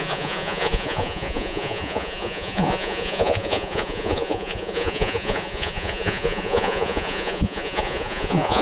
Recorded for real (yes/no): no